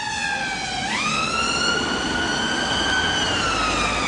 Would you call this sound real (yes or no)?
yes